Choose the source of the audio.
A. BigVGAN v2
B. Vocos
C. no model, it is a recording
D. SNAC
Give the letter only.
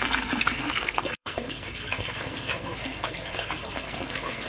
D